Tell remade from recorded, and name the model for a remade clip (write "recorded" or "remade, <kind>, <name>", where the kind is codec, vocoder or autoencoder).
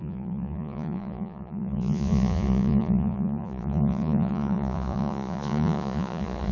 remade, vocoder, Vocos